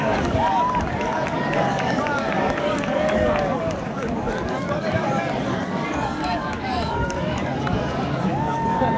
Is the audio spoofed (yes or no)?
yes